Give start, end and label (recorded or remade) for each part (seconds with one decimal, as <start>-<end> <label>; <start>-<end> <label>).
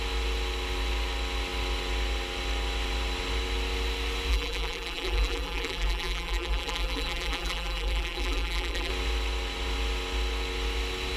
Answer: 0.0-4.3 recorded; 4.3-8.9 remade; 8.9-11.2 recorded